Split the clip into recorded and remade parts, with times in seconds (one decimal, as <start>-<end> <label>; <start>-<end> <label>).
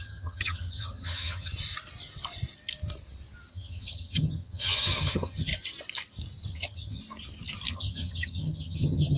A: 0.0-1.5 remade; 1.5-3.5 recorded; 3.5-5.5 remade; 5.5-6.5 recorded; 6.5-7.0 remade; 7.0-7.7 recorded; 7.7-9.2 remade